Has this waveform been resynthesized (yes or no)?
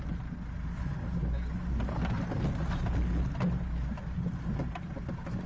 no